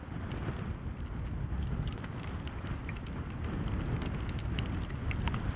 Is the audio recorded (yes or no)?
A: yes